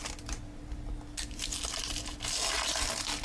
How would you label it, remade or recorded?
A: recorded